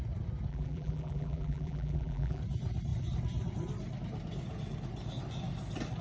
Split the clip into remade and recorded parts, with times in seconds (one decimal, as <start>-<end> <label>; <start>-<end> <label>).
0.0-0.5 recorded; 0.5-2.4 remade; 2.4-6.0 recorded